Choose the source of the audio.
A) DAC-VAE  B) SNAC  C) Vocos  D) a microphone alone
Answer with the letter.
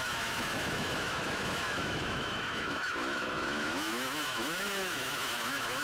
A